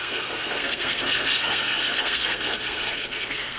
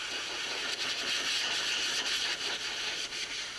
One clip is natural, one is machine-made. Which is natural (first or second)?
second